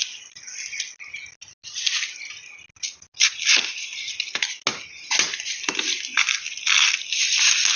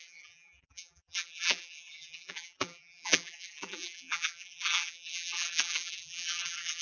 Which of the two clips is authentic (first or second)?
first